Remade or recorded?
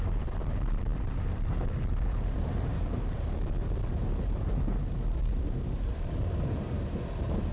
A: remade